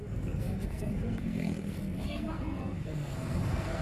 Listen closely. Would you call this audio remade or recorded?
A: remade